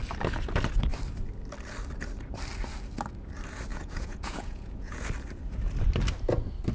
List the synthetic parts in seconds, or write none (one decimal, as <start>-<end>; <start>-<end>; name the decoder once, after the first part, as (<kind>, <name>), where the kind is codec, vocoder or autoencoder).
3.7-5.0 (vocoder, Vocos)